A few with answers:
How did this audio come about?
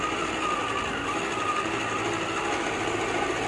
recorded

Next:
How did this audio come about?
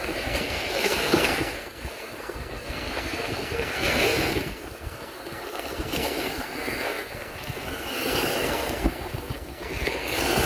remade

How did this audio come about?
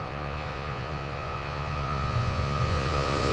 remade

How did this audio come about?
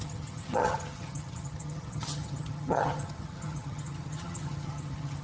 remade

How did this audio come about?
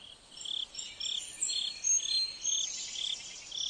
recorded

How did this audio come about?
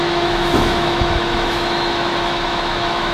remade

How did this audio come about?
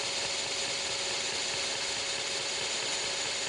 recorded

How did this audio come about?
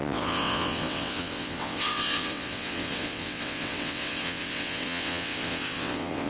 remade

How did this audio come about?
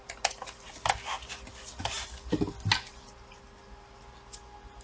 recorded